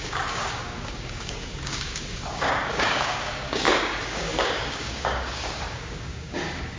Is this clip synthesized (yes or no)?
yes